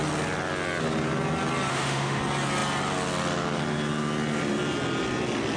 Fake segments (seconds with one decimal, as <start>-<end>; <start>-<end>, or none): 1.7-2.2